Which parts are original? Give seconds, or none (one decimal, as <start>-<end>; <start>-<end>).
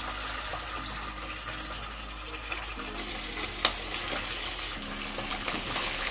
0.0-5.3